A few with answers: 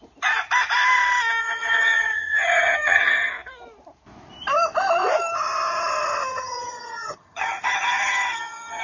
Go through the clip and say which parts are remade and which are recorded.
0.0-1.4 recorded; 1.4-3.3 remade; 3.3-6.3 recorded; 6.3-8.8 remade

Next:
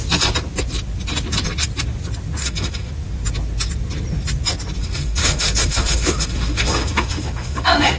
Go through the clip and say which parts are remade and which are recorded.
0.0-2.4 recorded; 2.4-2.9 remade; 2.9-4.8 recorded; 4.8-8.0 remade

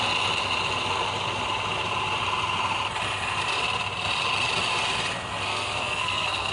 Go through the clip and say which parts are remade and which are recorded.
0.0-5.5 recorded; 5.5-6.5 remade

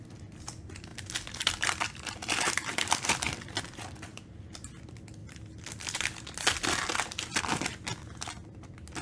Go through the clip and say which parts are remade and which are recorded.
0.0-0.9 recorded; 0.9-3.5 remade; 3.5-4.1 recorded; 4.1-4.7 remade; 4.7-9.0 recorded